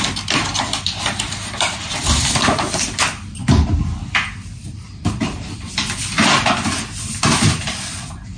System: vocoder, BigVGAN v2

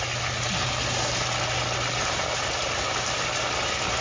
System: none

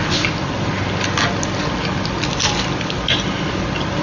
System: none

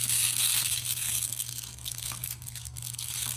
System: codec, SNAC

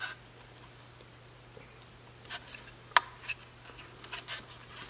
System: none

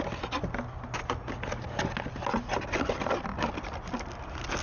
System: none